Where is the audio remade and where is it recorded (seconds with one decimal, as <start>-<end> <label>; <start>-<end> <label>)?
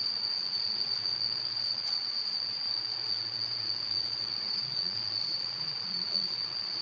0.0-6.8 remade